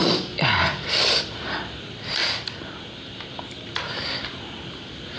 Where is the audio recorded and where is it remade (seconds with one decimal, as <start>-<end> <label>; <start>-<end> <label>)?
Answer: 0.0-5.2 recorded